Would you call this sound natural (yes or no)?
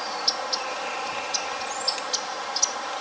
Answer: yes